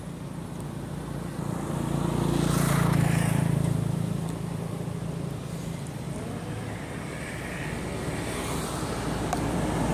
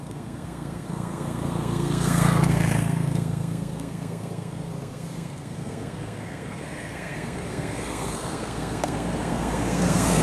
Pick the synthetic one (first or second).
second